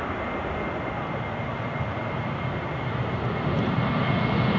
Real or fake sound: real